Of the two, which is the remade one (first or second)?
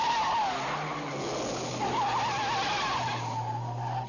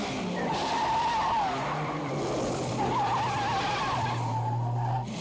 second